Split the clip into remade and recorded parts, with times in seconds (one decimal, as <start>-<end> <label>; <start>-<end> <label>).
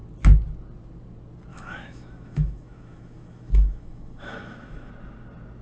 0.0-1.5 recorded; 1.5-4.9 remade; 4.9-5.6 recorded